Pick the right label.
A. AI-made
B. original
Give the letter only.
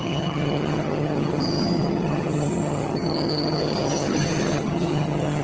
A